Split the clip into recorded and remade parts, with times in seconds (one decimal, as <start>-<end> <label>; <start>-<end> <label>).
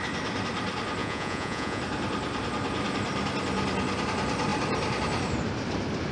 0.0-1.0 recorded; 1.0-1.8 remade; 1.8-6.1 recorded